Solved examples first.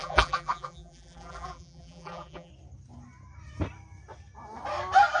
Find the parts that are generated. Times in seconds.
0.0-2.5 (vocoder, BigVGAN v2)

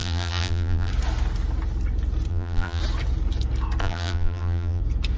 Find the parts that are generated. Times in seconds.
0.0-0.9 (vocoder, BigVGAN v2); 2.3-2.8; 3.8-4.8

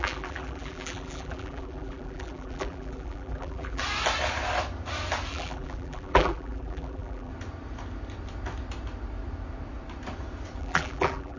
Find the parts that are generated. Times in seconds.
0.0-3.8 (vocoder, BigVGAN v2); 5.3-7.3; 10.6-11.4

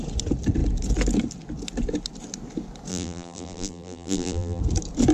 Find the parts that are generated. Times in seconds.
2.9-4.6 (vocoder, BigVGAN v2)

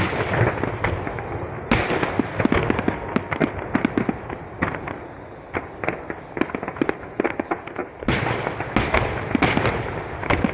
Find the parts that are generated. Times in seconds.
7.8-8.4 (vocoder, BigVGAN v2)

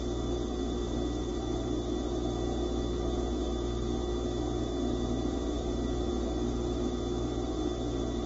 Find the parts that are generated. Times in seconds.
none

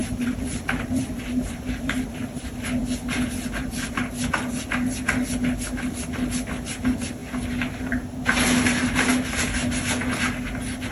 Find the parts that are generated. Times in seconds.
0.0-2.0 (vocoder, BigVGAN v2)